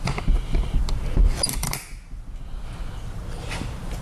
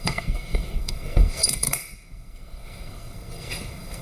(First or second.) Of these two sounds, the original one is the first